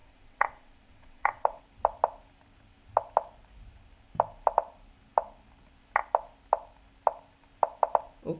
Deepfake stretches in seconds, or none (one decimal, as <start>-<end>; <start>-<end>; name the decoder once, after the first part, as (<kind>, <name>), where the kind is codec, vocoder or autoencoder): 0.0-1.6 (vocoder, WaveNeXt)